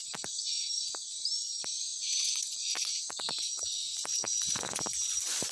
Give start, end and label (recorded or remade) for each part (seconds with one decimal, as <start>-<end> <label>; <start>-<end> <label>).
0.0-0.6 remade; 0.6-1.9 recorded; 1.9-4.8 remade; 4.8-5.5 recorded